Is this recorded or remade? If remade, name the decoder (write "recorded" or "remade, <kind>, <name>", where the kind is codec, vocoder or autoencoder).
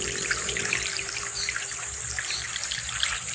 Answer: remade, vocoder, BigVGAN v2